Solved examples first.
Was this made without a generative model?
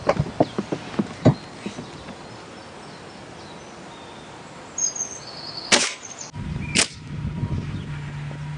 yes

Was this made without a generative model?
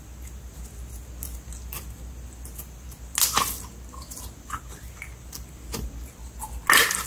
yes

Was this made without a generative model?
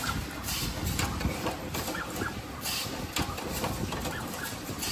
no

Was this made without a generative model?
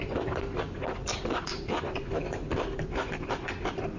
yes